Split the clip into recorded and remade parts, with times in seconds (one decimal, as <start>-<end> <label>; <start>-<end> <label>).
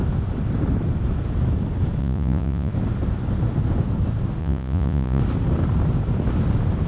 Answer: 0.0-2.0 recorded; 2.0-2.7 remade; 2.7-4.4 recorded; 4.4-5.2 remade; 5.2-6.9 recorded